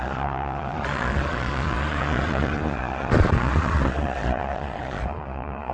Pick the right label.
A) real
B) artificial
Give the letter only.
B